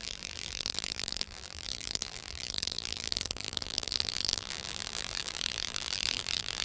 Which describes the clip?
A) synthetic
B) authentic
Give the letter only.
A